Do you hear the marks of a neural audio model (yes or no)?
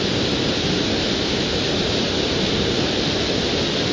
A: no